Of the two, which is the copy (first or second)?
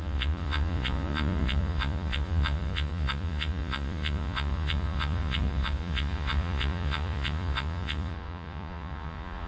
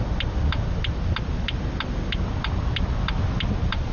first